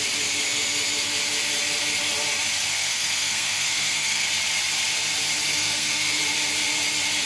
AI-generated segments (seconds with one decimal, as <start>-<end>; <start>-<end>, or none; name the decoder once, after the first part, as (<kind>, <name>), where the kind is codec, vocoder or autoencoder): 2.7-4.3 (codec, SNAC); 5.5-6.2